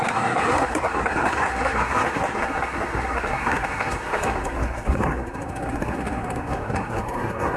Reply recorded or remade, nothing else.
remade